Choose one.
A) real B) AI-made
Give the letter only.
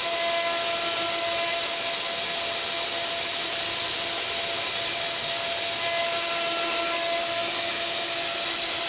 A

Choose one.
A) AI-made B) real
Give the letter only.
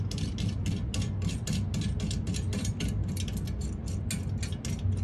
B